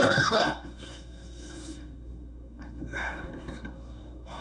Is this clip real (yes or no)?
no